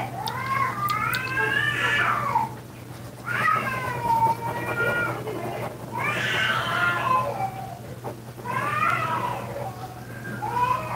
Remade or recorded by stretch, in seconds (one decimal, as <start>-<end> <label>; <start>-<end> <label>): 0.0-3.3 recorded; 3.3-4.2 remade; 4.2-11.0 recorded